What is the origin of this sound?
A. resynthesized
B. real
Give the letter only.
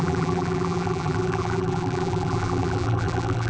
A